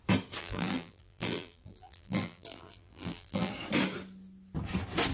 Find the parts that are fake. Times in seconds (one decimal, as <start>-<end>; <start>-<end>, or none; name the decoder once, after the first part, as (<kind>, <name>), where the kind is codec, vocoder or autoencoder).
0.4-3.5 (vocoder, BigVGAN v2)

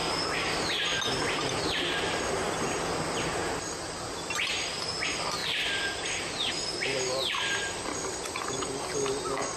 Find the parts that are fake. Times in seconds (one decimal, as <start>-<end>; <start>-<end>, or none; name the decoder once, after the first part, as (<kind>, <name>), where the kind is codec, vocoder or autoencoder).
5.4-8.7 (vocoder, BigVGAN v2)

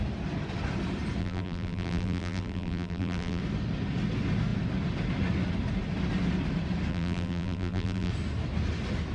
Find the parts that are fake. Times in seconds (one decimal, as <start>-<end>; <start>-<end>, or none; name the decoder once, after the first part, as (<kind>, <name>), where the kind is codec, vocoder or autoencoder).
1.2-3.4 (vocoder, BigVGAN v2); 6.9-8.1

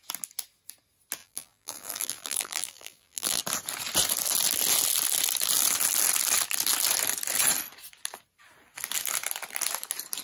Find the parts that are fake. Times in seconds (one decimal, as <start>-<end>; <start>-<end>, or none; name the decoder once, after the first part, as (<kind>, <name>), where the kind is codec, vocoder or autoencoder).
1.2-3.4 (vocoder, BigVGAN v2)